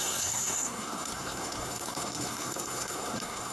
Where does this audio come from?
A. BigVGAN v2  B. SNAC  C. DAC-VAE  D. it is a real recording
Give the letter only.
B